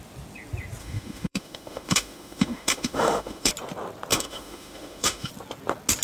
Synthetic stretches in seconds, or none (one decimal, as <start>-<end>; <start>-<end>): 0.8-3.5; 4.1-5.3